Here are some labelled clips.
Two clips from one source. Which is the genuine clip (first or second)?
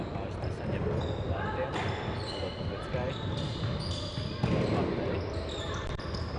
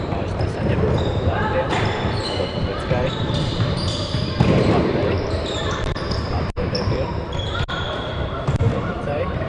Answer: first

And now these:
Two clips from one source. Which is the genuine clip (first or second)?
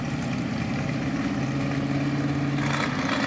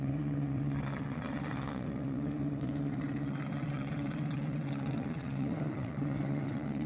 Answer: first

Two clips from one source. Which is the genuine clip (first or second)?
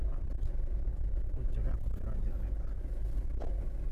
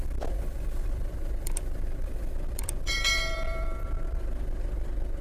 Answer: first